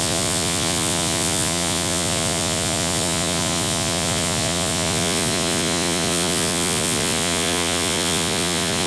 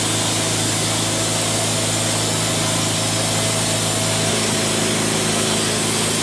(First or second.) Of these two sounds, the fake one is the first